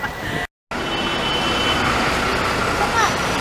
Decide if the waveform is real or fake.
real